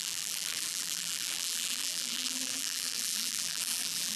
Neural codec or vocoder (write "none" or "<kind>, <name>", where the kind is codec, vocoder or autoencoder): vocoder, BigVGAN v2